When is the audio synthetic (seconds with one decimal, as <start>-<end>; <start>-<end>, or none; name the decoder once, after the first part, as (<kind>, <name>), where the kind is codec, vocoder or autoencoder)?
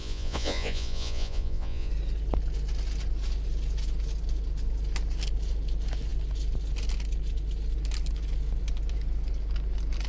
0.0-1.9 (vocoder, Vocos)